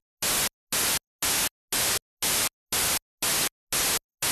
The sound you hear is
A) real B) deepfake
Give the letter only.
A